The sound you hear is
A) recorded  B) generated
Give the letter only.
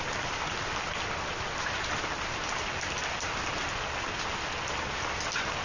A